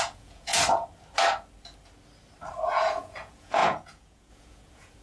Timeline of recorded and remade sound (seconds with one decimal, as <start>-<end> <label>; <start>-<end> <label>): 0.0-0.5 remade; 0.5-2.7 recorded; 2.7-5.0 remade